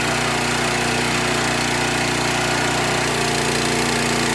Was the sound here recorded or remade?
recorded